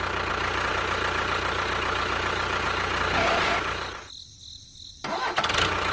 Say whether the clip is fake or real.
real